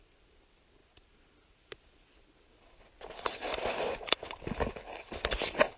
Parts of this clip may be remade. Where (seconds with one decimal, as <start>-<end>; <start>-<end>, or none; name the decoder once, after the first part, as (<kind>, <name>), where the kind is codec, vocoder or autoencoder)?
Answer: none